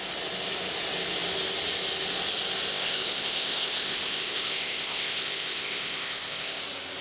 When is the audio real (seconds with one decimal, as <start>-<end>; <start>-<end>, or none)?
0.0-2.7; 6.6-7.0